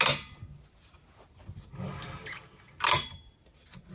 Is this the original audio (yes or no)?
yes